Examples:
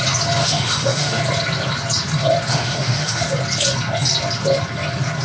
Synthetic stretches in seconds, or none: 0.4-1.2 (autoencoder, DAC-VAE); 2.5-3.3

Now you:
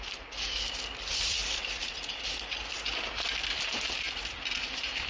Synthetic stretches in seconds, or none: none

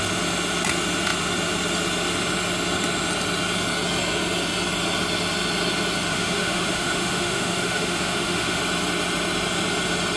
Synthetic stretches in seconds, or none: 6.1-8.6 (autoencoder, DAC-VAE)

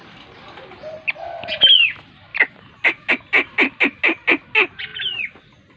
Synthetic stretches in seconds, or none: none

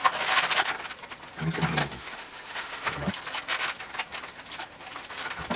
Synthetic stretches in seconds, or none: 1.8-3.1 (autoencoder, DAC-VAE)

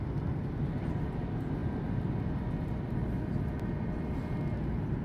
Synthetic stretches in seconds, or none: none

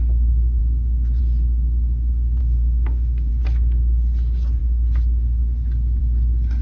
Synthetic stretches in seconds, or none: 2.4-3.3 (autoencoder, DAC-VAE)

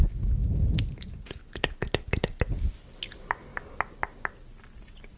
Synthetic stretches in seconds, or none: none